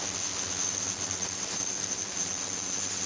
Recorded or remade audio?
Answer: recorded